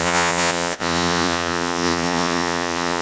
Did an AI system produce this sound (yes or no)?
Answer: yes